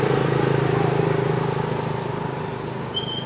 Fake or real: real